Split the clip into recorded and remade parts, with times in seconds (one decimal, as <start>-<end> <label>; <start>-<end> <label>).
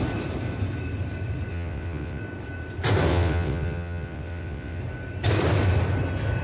0.0-1.5 recorded; 1.5-2.2 remade; 2.2-3.1 recorded; 3.1-4.8 remade; 4.8-6.4 recorded